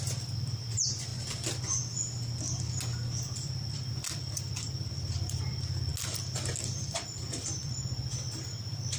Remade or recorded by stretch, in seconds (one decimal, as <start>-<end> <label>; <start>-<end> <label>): 0.0-1.1 remade; 1.1-3.1 recorded; 3.1-5.9 remade; 5.9-6.6 recorded; 6.6-9.0 remade